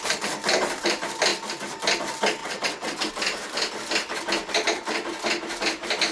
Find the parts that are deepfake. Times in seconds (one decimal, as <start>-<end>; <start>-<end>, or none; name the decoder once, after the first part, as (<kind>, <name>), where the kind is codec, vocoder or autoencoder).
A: 2.4-3.1 (vocoder, WaveNeXt)